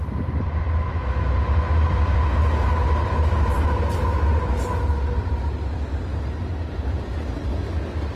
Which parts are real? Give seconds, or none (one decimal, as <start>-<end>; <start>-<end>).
0.0-8.2